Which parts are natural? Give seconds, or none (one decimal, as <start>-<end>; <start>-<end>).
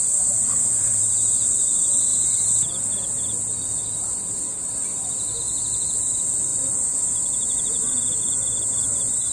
0.0-9.3